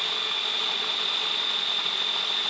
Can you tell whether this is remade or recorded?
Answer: recorded